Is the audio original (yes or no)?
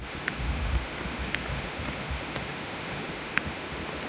no